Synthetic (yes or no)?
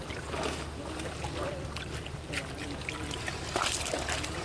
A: no